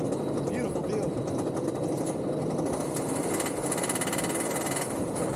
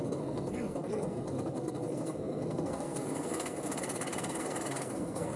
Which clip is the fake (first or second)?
second